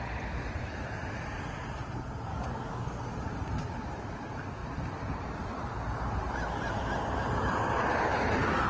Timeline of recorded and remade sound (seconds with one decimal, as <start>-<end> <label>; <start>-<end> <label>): 0.0-2.3 recorded; 2.3-3.1 remade; 3.1-8.7 recorded